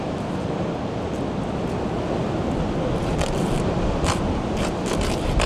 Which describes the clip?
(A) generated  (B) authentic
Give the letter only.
B